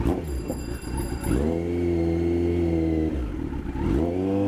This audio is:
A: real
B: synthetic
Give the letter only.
A